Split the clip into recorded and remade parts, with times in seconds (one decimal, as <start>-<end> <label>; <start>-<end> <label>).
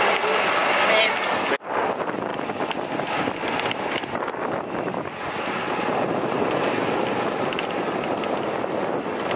0.0-9.4 recorded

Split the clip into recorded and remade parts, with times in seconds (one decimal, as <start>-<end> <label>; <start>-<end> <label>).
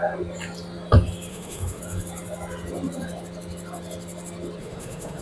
0.0-1.3 recorded; 1.3-1.8 remade; 1.8-4.6 recorded; 4.6-5.2 remade